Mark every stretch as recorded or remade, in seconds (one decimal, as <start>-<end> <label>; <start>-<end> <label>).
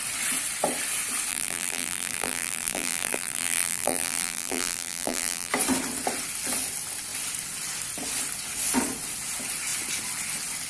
0.0-1.3 recorded; 1.3-5.5 remade; 5.5-10.7 recorded